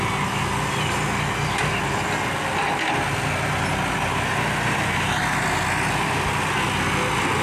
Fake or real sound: real